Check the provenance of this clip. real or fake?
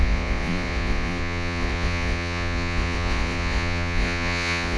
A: fake